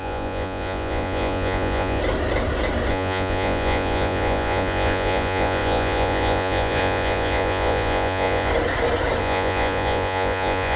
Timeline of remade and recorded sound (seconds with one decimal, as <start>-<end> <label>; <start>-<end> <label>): 0.0-2.0 remade; 2.0-2.9 recorded; 2.9-8.5 remade; 8.5-9.2 recorded; 9.2-10.8 remade